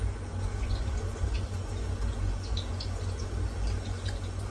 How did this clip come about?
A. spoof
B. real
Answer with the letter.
A